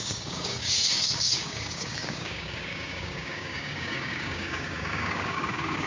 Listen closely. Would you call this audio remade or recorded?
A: remade